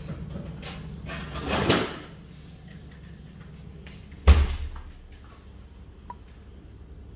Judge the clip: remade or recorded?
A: recorded